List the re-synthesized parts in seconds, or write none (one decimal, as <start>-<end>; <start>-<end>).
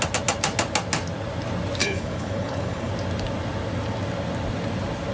1.8-2.9